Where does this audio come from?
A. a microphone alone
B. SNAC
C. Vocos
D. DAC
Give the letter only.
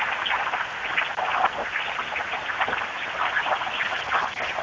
A